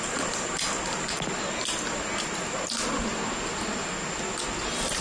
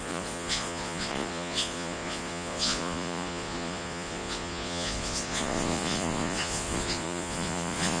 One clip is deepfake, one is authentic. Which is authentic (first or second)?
first